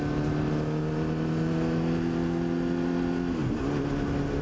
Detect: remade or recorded recorded